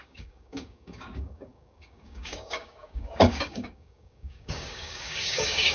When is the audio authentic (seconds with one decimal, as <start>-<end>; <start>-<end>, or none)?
none